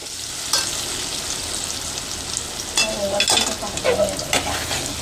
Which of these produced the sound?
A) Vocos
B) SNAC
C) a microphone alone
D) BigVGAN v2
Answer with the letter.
C